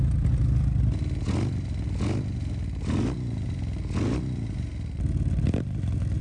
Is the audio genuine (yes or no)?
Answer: yes